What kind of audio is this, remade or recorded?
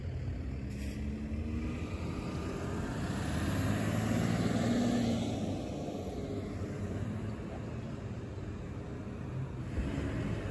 recorded